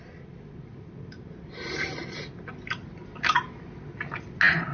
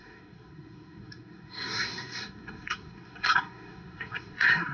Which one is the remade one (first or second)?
second